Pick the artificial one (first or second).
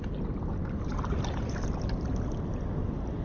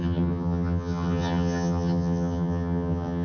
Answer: second